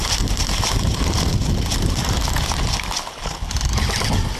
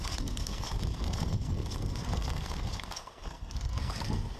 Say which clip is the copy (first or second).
second